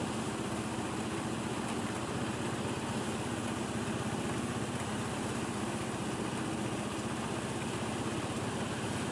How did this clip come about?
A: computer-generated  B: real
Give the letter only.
B